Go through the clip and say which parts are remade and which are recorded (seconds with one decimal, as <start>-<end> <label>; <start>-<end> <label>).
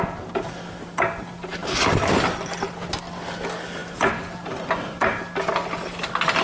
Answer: 0.0-6.4 recorded